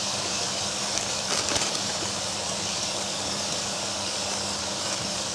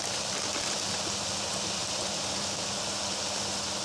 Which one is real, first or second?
second